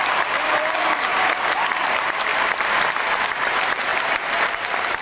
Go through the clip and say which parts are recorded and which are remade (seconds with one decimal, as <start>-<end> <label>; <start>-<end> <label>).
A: 0.0-1.1 remade; 1.1-1.8 recorded; 1.8-2.3 remade; 2.3-2.9 recorded; 2.9-3.9 remade; 3.9-4.4 recorded; 4.4-5.0 remade

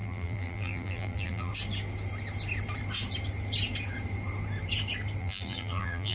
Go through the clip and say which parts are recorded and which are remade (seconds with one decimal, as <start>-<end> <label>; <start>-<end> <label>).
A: 0.0-1.5 remade; 1.5-5.2 recorded; 5.2-6.1 remade

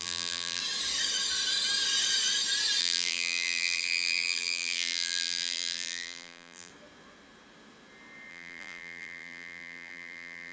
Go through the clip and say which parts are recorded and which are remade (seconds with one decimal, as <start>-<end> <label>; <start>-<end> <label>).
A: 0.0-0.6 remade; 0.6-2.8 recorded; 2.8-6.7 remade; 6.7-8.3 recorded; 8.3-10.5 remade